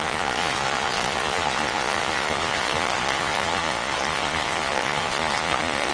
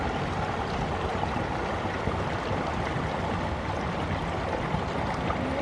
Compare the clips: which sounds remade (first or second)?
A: first